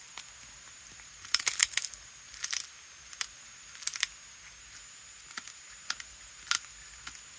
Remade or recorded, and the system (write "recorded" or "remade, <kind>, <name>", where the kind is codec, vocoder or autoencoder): recorded